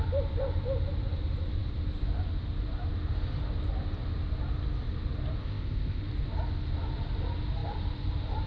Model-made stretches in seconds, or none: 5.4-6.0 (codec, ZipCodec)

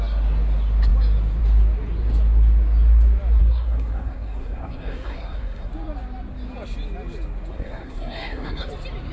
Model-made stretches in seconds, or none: 3.4-5.7 (codec, SNAC); 7.5-8.7

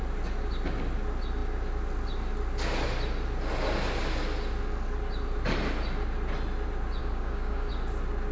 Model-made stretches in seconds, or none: 7.0-7.7 (codec, DAC)

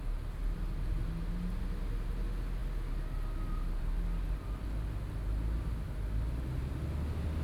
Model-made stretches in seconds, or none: none

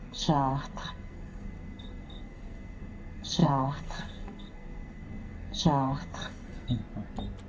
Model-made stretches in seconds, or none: 0.0-6.8 (codec, SNAC)

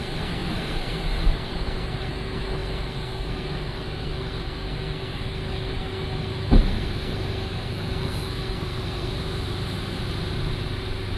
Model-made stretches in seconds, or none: 0.0-9.1 (codec, SNAC)

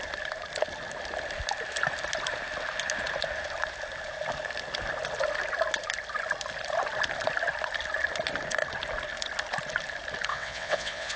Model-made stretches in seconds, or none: 10.3-11.2 (vocoder, WaveNeXt)